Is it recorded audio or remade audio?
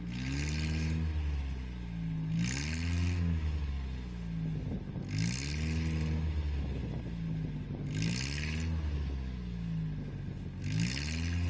recorded